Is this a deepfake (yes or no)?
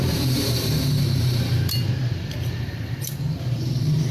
yes